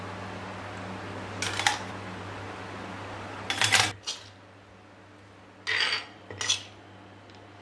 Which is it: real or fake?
real